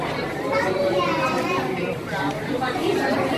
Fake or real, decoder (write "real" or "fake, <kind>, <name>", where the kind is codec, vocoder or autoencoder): fake, vocoder, BigVGAN v2